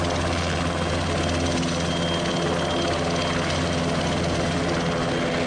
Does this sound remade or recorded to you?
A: recorded